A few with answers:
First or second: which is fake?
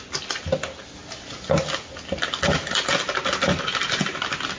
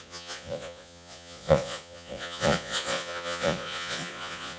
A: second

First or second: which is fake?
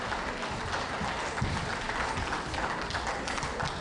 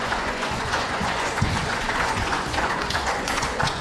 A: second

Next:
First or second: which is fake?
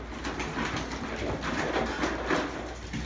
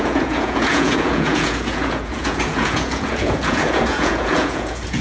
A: second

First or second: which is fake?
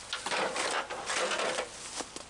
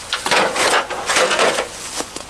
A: second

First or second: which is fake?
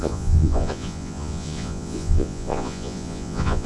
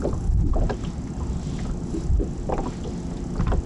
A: first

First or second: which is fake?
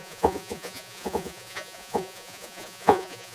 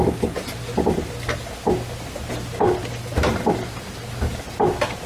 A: first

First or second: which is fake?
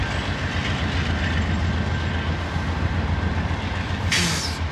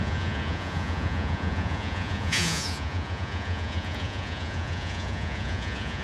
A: second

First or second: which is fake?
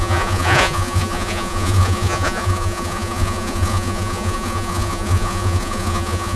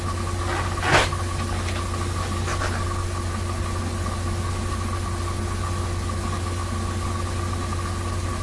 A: first